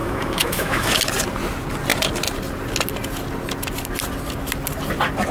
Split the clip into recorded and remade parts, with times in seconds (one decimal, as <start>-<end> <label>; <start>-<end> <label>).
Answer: 0.0-1.0 remade; 1.0-5.3 recorded